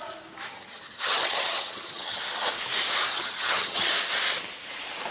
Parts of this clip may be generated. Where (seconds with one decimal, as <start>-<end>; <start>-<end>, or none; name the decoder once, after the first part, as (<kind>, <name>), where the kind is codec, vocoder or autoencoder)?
0.5-2.2 (vocoder, HiFi-GAN); 3.1-3.9